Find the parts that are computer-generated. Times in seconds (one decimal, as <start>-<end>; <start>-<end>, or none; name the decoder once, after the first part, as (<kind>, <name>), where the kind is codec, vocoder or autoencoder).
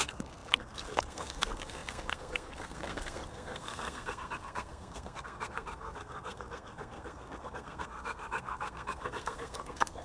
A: 0.0-10.0 (codec, SNAC)